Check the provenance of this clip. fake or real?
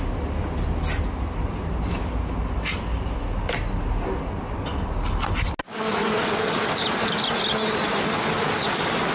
real